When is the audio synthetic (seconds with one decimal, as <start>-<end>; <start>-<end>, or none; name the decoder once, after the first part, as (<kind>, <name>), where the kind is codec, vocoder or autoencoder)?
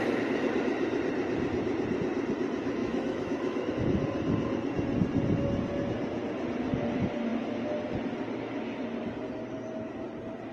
2.8-3.7 (autoencoder, DAC-VAE)